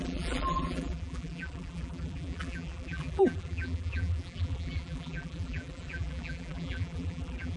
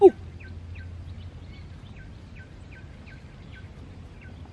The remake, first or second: first